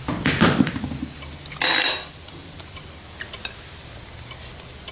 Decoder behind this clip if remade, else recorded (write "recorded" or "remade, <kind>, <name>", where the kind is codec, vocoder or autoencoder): recorded